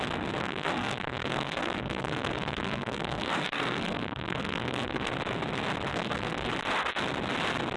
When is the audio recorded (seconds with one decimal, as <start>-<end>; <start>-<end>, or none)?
0.0-0.4; 5.1-5.9; 6.5-7.8